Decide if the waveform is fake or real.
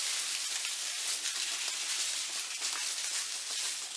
real